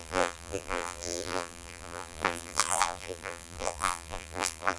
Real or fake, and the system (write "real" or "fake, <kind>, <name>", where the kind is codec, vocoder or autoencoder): fake, vocoder, BigVGAN v2